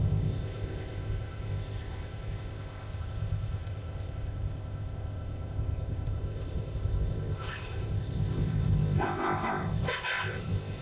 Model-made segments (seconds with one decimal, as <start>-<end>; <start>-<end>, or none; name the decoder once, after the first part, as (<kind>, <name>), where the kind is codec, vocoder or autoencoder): 0.0-10.8 (codec, ZipCodec)